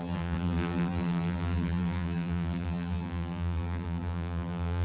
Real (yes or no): no